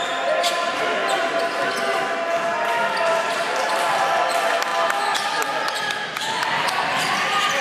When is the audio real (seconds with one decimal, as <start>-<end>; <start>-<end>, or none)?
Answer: 1.0-3.0